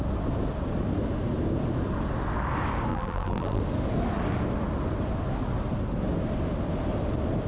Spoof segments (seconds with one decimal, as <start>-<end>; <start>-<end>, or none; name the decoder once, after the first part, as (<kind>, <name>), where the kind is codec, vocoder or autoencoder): 2.9-3.6 (vocoder, BigVGAN v2)